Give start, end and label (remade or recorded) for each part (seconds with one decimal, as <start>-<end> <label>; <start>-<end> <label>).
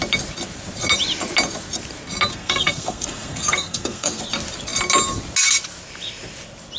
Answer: 0.0-2.3 recorded; 2.3-4.2 remade; 4.2-6.8 recorded